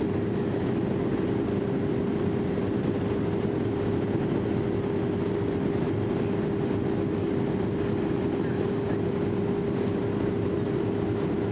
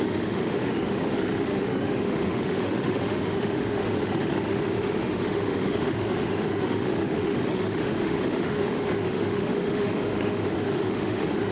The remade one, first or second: second